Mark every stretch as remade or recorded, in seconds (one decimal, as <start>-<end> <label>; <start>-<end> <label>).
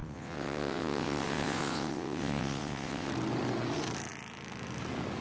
0.0-3.1 remade; 3.1-5.2 recorded